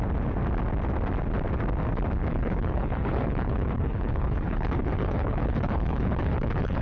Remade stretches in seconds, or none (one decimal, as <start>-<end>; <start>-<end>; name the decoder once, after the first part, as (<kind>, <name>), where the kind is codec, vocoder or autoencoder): 2.3-6.8 (codec, HILCodec)